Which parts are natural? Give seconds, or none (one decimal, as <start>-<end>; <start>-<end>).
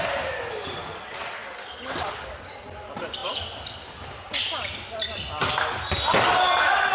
0.0-6.9